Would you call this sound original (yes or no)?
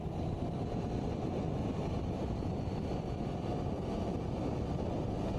yes